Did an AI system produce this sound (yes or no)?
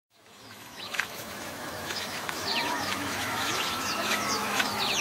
yes